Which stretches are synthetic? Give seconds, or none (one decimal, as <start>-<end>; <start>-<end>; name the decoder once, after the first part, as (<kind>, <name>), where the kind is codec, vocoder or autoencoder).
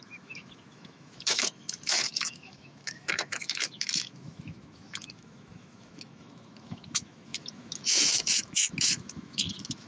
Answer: 0.0-9.9 (autoencoder, DAC-VAE)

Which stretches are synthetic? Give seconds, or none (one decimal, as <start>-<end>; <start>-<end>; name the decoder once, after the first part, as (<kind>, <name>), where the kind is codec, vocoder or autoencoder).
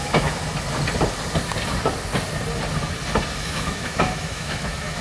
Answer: 0.0-0.4 (autoencoder, DAC-VAE); 3.4-5.0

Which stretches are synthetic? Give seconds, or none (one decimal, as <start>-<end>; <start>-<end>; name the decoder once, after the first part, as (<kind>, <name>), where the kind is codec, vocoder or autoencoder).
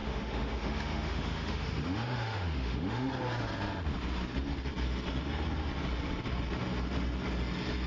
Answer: 0.0-3.1 (autoencoder, DAC-VAE)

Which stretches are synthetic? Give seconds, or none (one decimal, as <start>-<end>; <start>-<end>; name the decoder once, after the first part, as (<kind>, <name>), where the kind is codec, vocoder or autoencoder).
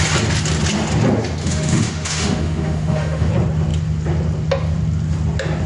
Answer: 1.4-3.3 (autoencoder, DAC-VAE)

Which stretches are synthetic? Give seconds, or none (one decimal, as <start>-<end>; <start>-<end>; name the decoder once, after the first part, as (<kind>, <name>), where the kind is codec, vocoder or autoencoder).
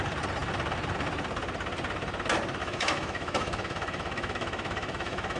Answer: 2.6-5.4 (autoencoder, DAC-VAE)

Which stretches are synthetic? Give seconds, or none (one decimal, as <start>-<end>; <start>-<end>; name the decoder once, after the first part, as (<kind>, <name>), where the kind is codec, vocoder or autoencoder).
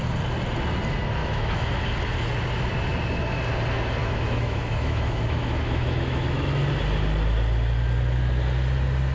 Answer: 1.2-1.8 (autoencoder, DAC-VAE); 4.0-6.5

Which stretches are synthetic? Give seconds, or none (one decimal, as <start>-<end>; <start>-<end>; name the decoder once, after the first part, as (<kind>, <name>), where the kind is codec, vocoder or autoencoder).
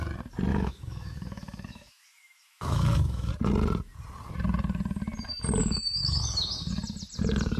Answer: 0.5-3.3 (autoencoder, DAC-VAE); 5.6-6.2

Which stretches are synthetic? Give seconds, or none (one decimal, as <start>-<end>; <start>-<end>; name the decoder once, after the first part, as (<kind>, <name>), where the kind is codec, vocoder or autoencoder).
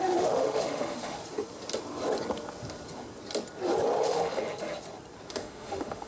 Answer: 0.0-1.2 (autoencoder, DAC-VAE); 4.0-4.4; 5.3-6.1